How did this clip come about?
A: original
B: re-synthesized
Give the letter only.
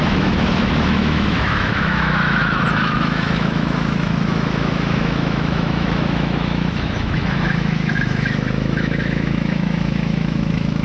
B